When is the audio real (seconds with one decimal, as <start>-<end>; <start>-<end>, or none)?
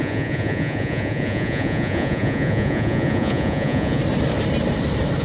4.0-5.2